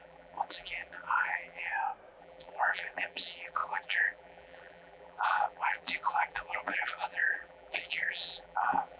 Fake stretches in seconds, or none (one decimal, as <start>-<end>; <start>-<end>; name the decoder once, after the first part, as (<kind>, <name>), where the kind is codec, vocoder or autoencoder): 0.0-1.7 (vocoder, BigVGAN v2); 2.2-9.0